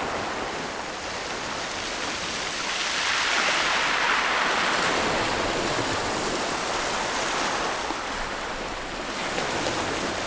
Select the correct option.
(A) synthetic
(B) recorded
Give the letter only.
B